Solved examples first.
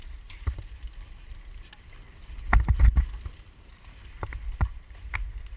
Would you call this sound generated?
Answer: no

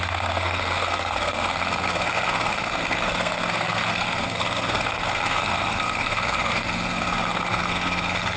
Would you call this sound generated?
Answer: yes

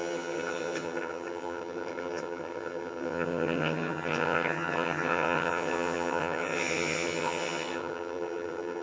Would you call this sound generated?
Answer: yes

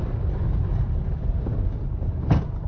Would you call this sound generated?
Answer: no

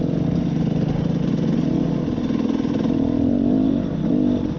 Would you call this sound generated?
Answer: no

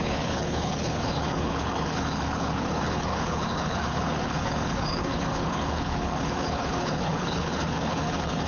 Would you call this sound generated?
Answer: yes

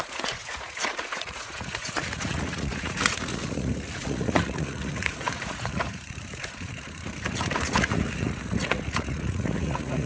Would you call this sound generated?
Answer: yes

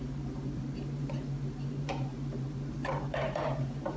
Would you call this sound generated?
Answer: yes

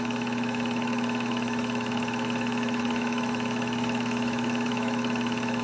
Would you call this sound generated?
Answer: yes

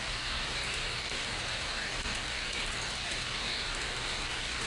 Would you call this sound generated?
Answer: yes